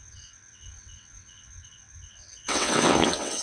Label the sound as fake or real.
fake